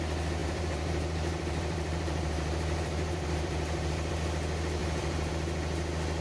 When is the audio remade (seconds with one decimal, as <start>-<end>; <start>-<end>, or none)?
0.4-4.1; 4.8-5.3